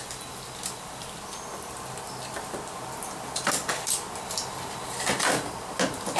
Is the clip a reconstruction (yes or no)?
no